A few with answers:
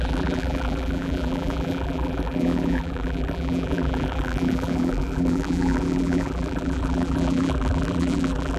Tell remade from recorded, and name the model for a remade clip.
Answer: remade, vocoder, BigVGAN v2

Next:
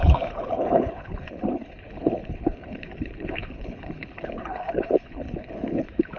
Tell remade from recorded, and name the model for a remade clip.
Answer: remade, codec, HILCodec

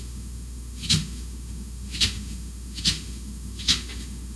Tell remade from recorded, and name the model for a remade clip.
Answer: remade, autoencoder, DAC-VAE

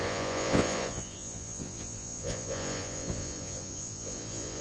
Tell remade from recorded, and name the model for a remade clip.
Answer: remade, vocoder, Vocos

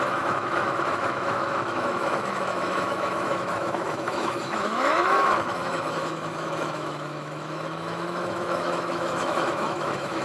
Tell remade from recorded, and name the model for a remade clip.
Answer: remade, autoencoder, DAC-VAE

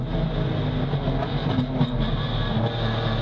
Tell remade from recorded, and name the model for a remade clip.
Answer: recorded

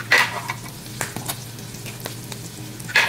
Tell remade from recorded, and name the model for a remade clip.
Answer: recorded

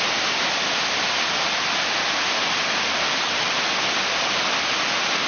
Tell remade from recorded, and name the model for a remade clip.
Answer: recorded